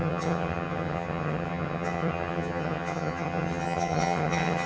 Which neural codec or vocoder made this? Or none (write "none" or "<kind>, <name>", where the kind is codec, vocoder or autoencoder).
vocoder, HiFi-GAN